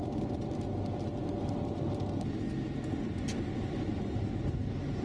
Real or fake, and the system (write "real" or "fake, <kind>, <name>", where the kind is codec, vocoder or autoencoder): real